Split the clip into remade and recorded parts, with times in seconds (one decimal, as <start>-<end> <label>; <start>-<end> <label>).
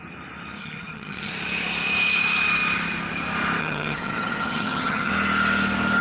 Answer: 0.0-0.6 recorded; 0.6-1.3 remade; 1.3-3.6 recorded; 3.6-5.1 remade; 5.1-6.0 recorded